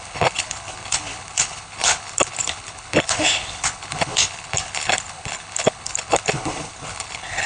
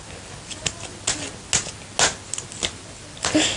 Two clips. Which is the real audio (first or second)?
second